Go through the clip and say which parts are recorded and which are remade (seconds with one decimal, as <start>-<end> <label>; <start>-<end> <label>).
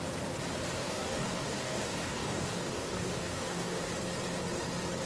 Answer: 0.0-0.8 recorded; 0.8-3.9 remade; 3.9-5.1 recorded